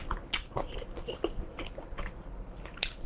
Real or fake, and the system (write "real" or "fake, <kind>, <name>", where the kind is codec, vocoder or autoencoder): real